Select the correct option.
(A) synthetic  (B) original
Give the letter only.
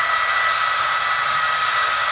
B